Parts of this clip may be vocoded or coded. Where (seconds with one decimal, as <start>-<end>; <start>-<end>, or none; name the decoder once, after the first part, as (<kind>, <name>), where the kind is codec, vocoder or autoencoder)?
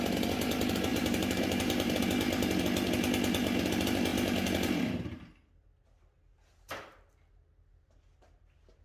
0.9-2.0 (vocoder, BigVGAN v2)